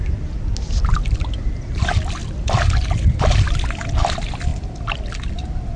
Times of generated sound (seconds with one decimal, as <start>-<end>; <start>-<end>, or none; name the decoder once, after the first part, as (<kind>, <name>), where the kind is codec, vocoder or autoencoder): none